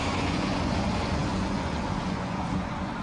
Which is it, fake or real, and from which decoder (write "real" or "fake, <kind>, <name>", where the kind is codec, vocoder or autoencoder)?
fake, vocoder, Vocos